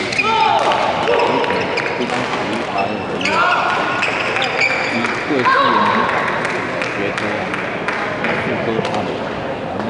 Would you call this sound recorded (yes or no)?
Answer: yes